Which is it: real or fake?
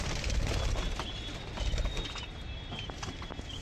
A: real